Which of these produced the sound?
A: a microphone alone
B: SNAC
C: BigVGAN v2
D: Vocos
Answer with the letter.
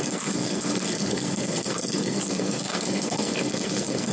B